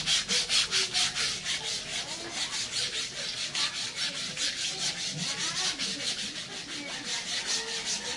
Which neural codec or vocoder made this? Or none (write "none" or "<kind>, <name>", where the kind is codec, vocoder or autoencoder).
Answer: none